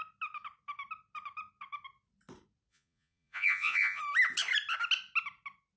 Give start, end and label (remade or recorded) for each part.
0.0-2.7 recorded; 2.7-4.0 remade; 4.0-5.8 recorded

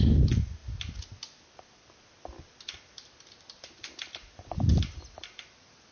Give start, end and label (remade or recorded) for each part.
0.0-5.9 recorded

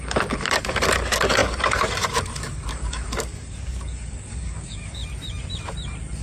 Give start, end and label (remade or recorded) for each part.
0.0-5.0 remade; 5.0-6.2 recorded

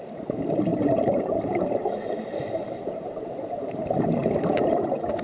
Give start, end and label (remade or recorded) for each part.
0.0-0.7 recorded; 0.7-3.8 remade; 3.8-5.2 recorded